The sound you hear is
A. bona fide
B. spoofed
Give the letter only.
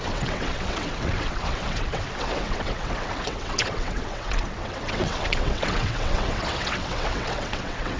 B